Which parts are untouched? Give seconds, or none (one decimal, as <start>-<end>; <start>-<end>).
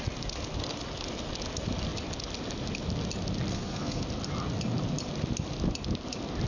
0.0-3.5; 4.0-6.5